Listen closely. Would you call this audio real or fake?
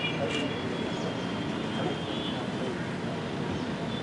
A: real